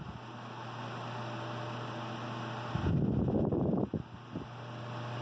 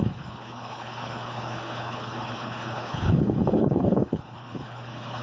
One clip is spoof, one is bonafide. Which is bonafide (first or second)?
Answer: first